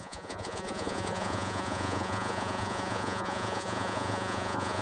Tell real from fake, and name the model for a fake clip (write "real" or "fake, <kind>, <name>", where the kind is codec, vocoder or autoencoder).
fake, vocoder, Vocos